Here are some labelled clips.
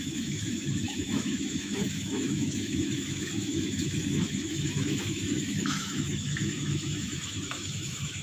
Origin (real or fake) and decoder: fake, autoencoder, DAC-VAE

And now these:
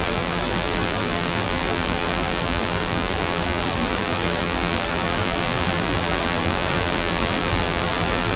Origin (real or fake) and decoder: fake, vocoder, BigVGAN v2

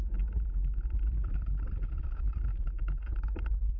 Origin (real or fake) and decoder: fake, vocoder, BigVGAN v2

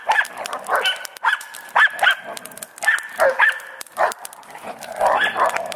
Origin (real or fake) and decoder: real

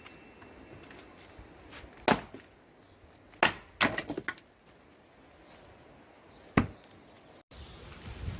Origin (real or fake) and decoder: real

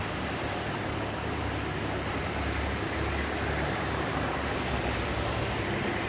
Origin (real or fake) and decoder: real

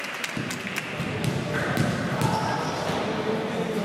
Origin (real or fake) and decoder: real